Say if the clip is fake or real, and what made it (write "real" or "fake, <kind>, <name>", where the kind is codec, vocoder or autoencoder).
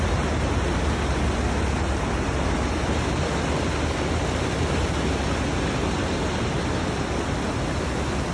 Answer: real